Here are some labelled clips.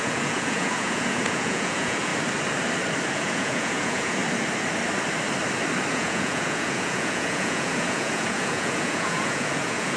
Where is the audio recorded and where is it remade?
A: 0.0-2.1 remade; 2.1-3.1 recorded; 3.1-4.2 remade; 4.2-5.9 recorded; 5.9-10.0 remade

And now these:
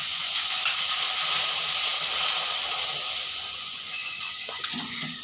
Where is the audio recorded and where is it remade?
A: 0.0-0.6 remade; 0.6-3.3 recorded; 3.3-5.2 remade

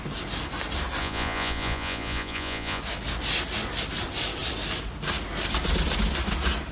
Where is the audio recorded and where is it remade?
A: 0.0-1.0 recorded; 1.0-2.8 remade; 2.8-6.7 recorded

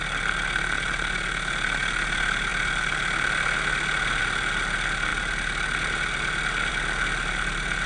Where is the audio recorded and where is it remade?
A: 0.0-7.9 recorded